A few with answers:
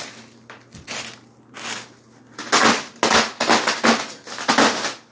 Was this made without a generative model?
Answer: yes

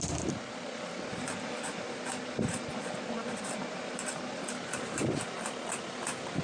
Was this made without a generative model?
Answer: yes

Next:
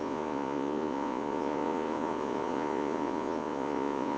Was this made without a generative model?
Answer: no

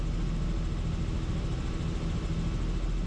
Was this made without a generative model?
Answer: yes